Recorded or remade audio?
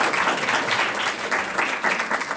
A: recorded